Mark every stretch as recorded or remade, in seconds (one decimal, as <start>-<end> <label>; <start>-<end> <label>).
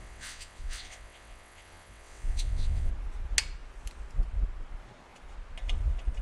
0.0-2.9 remade; 2.9-6.2 recorded